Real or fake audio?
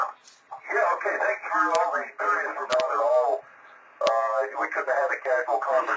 real